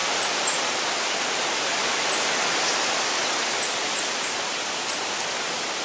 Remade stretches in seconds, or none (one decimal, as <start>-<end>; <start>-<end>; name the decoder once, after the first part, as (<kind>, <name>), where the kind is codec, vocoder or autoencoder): none